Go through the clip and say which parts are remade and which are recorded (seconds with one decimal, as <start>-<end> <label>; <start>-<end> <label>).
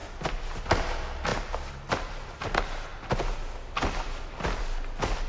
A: 0.0-5.3 recorded